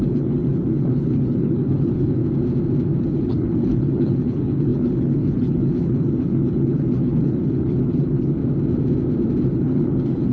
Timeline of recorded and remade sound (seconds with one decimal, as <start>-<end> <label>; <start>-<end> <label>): 0.0-2.2 remade; 2.2-3.0 recorded; 3.0-8.4 remade; 8.4-9.4 recorded; 9.4-10.3 remade